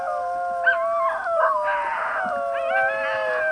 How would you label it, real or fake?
real